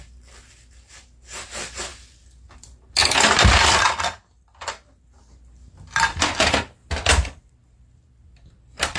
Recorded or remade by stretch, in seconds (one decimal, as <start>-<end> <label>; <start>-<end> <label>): 0.0-9.0 recorded